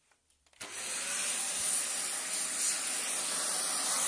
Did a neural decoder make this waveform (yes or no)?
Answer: no